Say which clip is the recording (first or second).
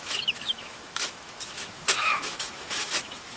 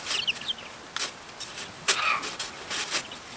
second